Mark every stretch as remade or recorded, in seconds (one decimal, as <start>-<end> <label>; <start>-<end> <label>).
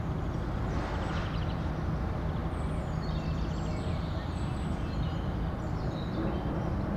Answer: 0.0-1.2 recorded; 1.2-1.7 remade; 1.7-7.0 recorded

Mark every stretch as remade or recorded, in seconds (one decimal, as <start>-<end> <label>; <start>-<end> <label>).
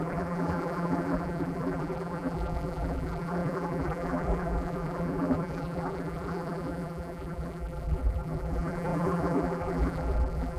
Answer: 0.0-10.6 remade